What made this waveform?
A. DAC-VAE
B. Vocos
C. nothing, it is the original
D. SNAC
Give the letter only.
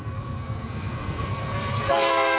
D